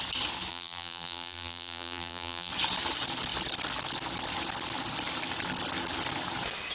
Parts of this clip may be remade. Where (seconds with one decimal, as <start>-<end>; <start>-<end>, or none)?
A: 0.5-2.5